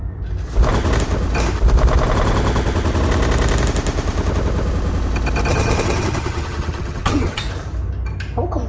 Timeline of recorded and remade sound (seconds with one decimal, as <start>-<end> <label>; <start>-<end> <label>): 0.0-5.5 recorded; 5.5-7.4 remade; 7.4-8.7 recorded